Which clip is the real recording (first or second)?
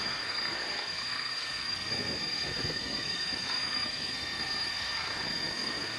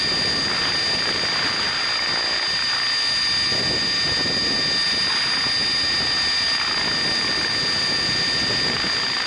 second